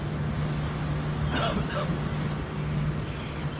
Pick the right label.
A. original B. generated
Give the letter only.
A